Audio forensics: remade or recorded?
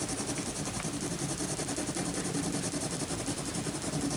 recorded